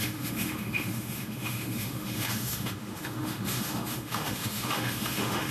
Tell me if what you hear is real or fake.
fake